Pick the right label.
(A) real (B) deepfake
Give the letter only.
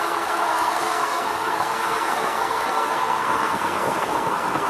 B